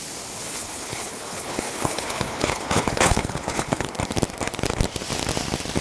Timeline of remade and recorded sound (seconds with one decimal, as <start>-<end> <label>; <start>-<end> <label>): 0.0-0.4 recorded; 0.4-3.9 remade; 3.9-5.8 recorded